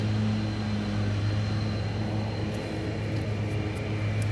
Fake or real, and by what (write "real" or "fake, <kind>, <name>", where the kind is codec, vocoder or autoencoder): real